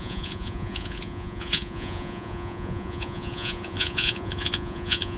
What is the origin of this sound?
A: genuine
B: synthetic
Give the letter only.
B